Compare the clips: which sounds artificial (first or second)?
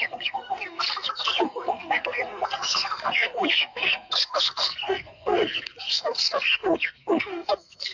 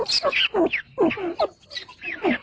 first